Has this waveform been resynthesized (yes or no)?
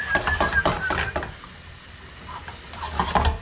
no